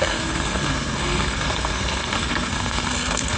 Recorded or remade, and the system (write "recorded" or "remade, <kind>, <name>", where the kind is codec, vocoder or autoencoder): remade, codec, SNAC